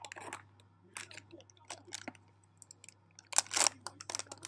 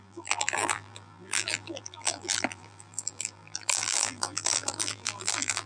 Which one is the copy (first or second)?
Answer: second